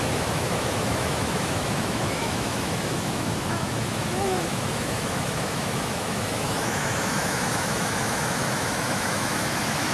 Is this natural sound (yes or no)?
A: no